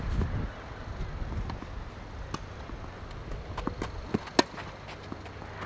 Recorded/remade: recorded